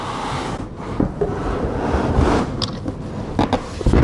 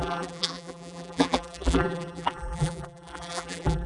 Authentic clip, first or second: first